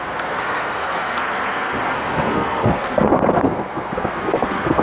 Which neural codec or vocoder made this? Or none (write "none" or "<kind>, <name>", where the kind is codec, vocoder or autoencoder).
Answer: codec, SNAC